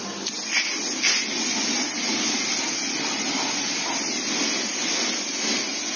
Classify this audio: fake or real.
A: real